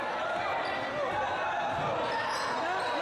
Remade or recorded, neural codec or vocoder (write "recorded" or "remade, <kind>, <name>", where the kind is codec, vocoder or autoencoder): recorded